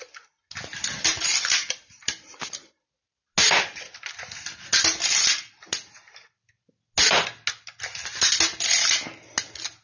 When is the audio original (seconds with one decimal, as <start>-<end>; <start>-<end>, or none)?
0.0-9.8